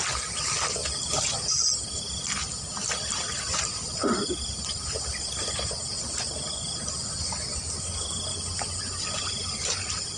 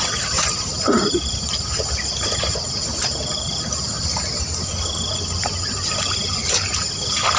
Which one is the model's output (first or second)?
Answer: second